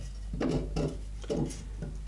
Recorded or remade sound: recorded